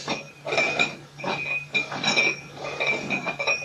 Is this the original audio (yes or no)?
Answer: no